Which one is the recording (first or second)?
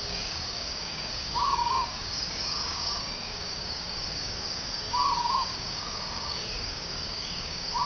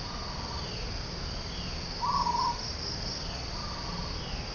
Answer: second